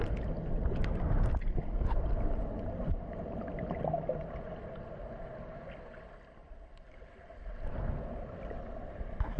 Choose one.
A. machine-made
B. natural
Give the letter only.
B